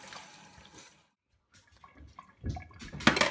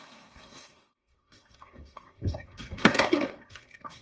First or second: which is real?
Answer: first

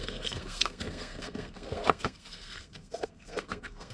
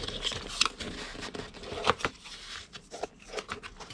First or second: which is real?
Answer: second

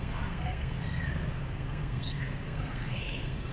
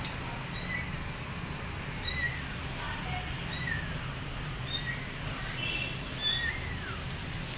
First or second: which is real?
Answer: second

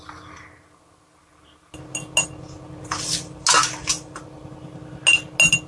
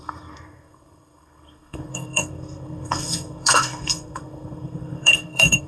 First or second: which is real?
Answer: first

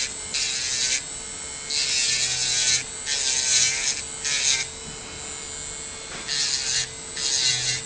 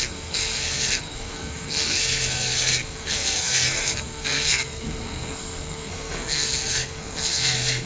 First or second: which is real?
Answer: first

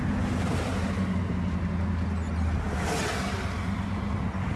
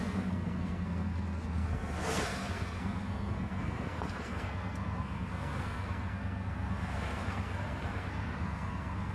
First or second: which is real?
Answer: first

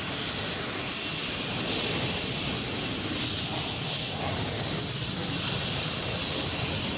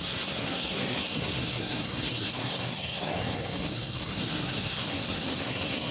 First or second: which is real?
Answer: first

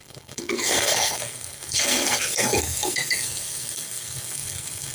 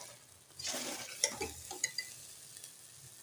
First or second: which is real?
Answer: second